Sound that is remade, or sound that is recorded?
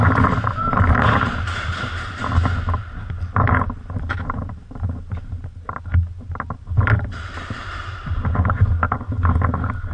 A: recorded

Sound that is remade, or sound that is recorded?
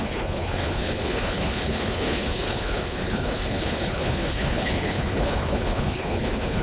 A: remade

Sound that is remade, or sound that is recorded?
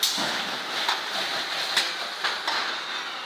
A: recorded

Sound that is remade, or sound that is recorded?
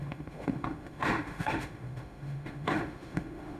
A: remade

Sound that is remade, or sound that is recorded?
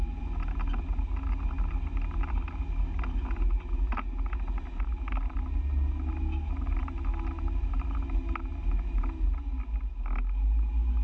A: recorded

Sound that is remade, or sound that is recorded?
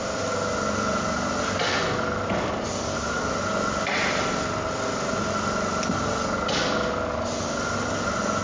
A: recorded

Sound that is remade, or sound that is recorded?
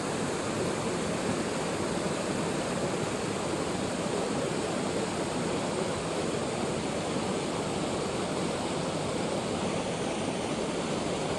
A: recorded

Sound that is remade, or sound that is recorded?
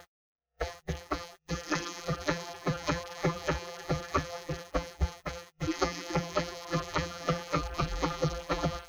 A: remade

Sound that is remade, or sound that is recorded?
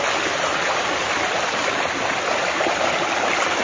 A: recorded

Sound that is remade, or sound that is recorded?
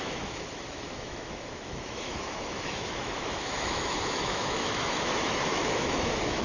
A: remade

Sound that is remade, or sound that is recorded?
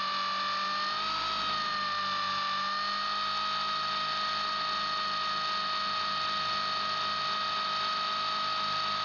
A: recorded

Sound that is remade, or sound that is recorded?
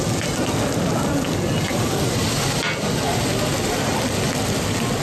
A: recorded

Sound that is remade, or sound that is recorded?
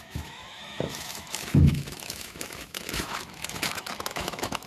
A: remade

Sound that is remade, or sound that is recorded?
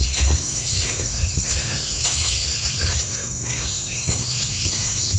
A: remade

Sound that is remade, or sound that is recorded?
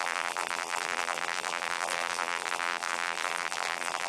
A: remade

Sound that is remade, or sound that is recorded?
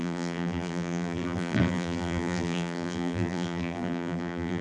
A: remade